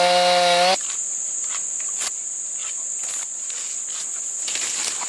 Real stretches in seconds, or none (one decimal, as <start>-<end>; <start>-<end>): 0.0-5.1